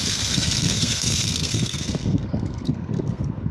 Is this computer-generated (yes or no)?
yes